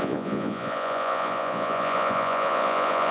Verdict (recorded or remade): remade